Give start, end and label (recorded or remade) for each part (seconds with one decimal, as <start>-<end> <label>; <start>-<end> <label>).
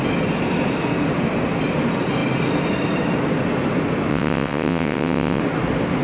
0.0-4.1 recorded; 4.1-5.4 remade; 5.4-6.0 recorded